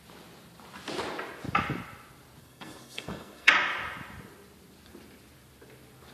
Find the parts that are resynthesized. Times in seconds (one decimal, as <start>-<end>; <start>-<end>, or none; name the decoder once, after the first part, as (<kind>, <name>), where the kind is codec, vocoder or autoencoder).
2.4-3.5 (codec, SNAC)